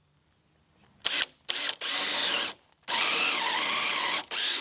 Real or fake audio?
real